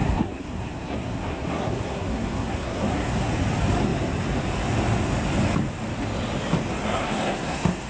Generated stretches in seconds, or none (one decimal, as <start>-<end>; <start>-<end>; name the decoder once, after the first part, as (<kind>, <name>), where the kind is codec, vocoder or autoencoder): 0.0-3.3 (codec, SNAC); 6.8-7.9